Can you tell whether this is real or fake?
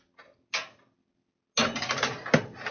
real